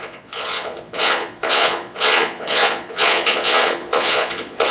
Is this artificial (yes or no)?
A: yes